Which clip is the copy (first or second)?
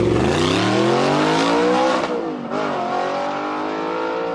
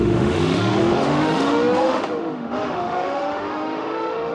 second